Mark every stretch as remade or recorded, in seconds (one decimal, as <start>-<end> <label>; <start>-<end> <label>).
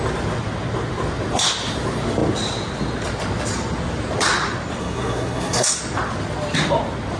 0.0-4.8 recorded; 4.8-5.8 remade; 5.8-7.2 recorded